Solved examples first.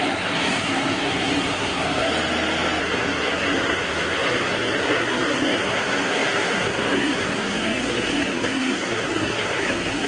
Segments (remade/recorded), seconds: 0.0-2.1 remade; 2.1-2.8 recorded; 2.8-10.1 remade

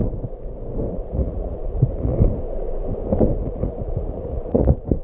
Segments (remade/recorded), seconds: 0.0-0.9 recorded; 0.9-2.1 remade; 2.1-3.4 recorded; 3.4-5.0 remade

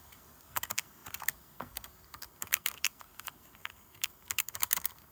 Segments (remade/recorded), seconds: 0.0-5.1 remade

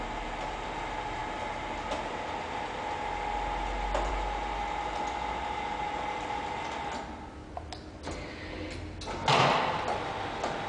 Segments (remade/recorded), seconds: 0.0-10.7 recorded

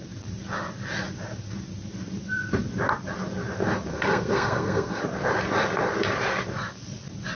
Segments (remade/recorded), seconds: 0.0-3.9 recorded; 3.9-5.0 remade; 5.0-7.3 recorded

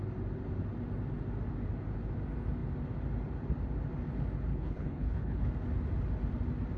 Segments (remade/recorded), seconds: 0.0-4.5 recorded; 4.5-5.5 remade; 5.5-6.8 recorded

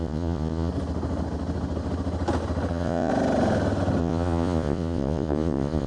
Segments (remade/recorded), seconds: 0.0-0.7 remade; 0.7-2.7 recorded; 2.7-3.1 remade; 3.1-4.0 recorded; 4.0-5.9 remade

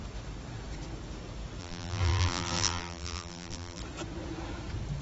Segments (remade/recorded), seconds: 0.0-1.6 recorded; 1.6-3.8 remade; 3.8-5.0 recorded